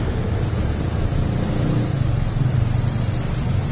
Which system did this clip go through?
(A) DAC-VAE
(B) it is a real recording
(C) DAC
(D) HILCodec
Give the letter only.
B